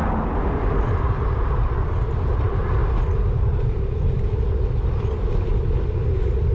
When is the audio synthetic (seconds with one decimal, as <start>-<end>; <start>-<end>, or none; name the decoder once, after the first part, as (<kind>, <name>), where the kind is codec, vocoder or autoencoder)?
none